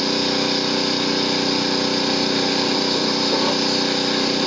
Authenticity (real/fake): real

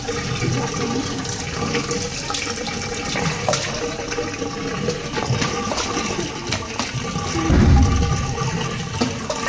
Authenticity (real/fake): real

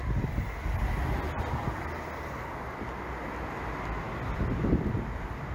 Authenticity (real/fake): real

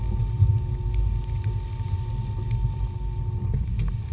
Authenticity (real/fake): real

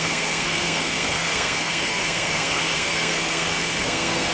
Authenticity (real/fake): fake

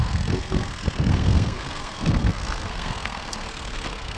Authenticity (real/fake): fake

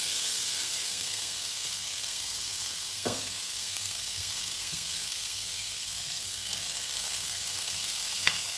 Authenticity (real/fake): fake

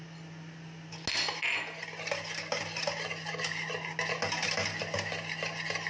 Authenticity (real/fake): real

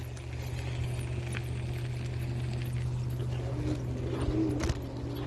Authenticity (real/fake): real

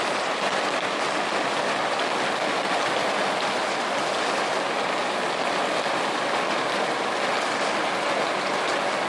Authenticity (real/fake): real